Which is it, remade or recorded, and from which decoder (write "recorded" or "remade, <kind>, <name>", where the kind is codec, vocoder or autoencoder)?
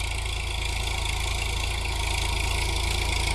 recorded